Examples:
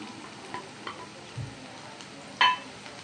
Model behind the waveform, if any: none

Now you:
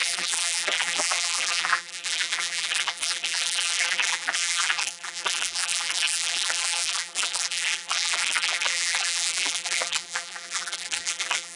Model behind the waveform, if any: vocoder, BigVGAN v2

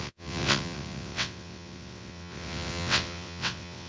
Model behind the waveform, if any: vocoder, WaveNeXt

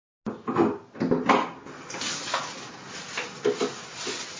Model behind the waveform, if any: none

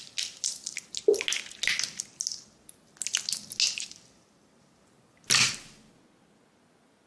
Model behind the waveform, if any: none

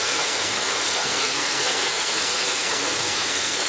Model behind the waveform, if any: codec, SNAC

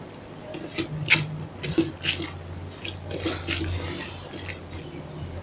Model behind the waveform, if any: none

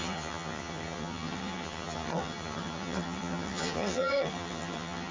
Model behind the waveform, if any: vocoder, HiFi-GAN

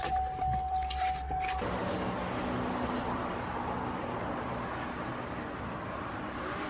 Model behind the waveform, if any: none